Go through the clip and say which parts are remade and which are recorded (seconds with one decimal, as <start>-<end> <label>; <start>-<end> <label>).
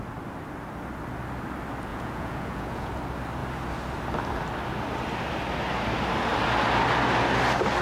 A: 0.0-1.9 recorded; 1.9-2.9 remade; 2.9-7.8 recorded